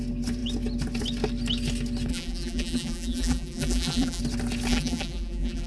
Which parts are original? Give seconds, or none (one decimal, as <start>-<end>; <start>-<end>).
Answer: 0.0-2.1; 4.2-4.7